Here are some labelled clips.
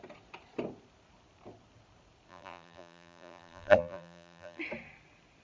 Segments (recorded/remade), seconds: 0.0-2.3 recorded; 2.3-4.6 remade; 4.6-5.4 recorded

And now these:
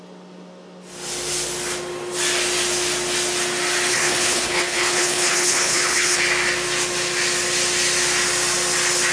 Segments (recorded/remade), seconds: 0.0-3.9 recorded; 3.9-6.2 remade; 6.2-9.1 recorded

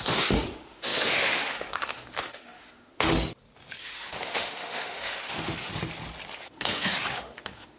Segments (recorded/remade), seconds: 0.0-3.3 remade; 3.3-3.8 recorded; 3.8-5.7 remade; 5.7-6.4 recorded; 6.4-7.8 remade

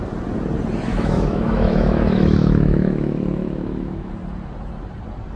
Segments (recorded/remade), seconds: 0.0-0.9 recorded; 0.9-4.1 remade; 4.1-5.4 recorded

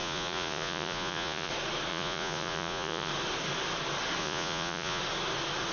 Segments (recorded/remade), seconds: 0.0-1.5 remade; 1.5-1.9 recorded; 1.9-3.1 remade; 3.1-4.2 recorded; 4.2-5.0 remade; 5.0-5.7 recorded

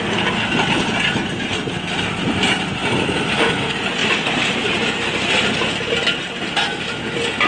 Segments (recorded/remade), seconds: 0.0-4.0 recorded; 4.0-5.8 remade; 5.8-7.5 recorded